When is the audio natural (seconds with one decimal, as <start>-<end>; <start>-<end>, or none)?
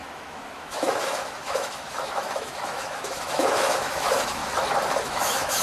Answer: 4.4-5.0